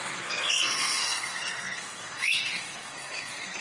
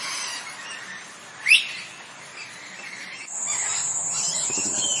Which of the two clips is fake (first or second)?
first